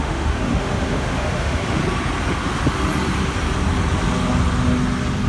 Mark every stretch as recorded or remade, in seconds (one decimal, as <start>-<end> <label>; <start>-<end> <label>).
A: 0.0-1.8 remade; 1.8-5.3 recorded